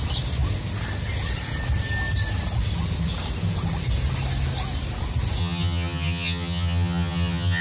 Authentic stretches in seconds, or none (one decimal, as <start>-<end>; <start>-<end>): 0.0-5.4